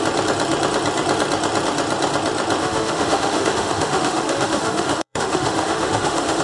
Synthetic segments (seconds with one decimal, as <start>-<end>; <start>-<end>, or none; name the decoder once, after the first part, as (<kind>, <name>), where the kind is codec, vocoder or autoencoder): 2.6-6.4 (autoencoder, DAC-VAE)